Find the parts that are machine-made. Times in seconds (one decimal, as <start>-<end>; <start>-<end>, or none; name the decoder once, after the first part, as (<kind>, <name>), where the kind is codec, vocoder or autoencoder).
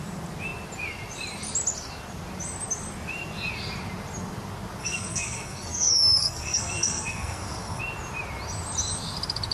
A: 4.8-7.8 (codec, SNAC)